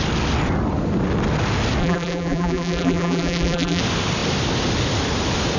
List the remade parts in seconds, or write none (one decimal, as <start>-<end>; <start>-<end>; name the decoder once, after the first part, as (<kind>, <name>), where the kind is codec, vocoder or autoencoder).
1.8-3.8 (vocoder, BigVGAN v2)